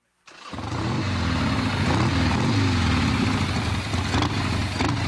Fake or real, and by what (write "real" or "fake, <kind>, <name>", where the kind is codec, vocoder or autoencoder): real